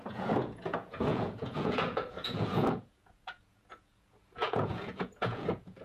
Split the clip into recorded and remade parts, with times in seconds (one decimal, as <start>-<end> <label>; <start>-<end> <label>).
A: 0.0-5.8 remade